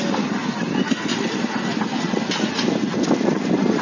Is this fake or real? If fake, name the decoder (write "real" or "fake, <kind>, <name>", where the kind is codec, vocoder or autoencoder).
real